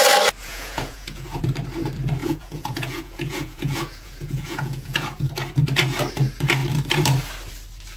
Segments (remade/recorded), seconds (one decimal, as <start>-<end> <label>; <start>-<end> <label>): 0.0-0.4 recorded; 0.4-1.4 remade; 1.4-2.2 recorded; 2.2-5.3 remade; 5.3-8.0 recorded